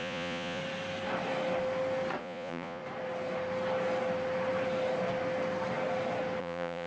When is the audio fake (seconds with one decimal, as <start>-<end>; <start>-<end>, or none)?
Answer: 0.0-0.6; 2.2-2.8; 6.4-6.9